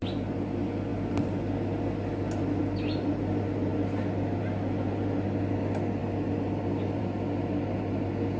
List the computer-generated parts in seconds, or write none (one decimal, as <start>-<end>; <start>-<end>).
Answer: none